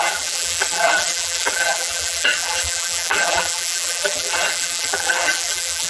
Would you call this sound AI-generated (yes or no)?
yes